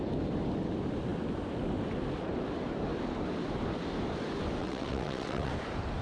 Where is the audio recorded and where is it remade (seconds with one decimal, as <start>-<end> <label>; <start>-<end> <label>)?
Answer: 0.0-4.6 recorded; 4.6-5.5 remade; 5.5-6.0 recorded